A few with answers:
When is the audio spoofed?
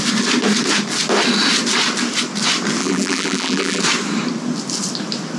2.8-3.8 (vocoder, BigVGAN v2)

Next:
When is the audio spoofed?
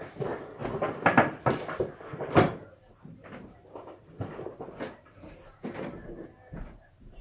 0.0-0.6 (vocoder, BigVGAN v2); 2.1-7.2